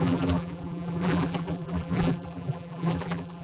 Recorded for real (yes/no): no